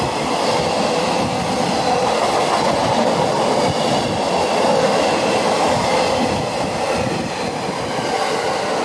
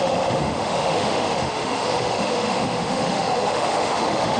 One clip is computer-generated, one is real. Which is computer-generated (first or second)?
second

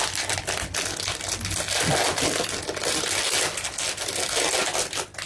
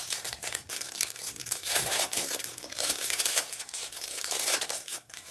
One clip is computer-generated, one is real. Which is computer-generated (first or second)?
second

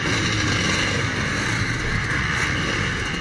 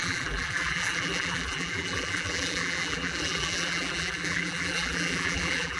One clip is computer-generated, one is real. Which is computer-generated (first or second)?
second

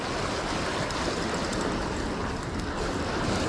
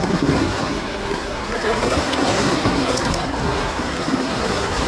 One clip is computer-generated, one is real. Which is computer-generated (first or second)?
second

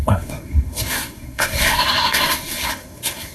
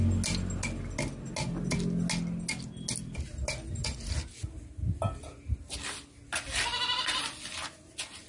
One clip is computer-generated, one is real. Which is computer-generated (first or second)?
first